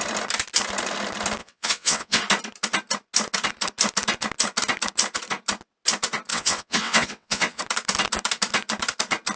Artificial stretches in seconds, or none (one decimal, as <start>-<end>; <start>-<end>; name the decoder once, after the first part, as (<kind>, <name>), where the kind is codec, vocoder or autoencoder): 1.4-2.2 (vocoder, WaveNeXt); 6.3-7.6